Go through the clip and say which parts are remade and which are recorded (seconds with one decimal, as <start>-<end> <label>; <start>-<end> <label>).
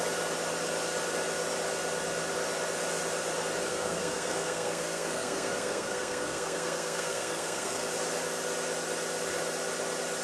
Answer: 0.0-3.6 recorded; 3.6-7.9 remade; 7.9-10.2 recorded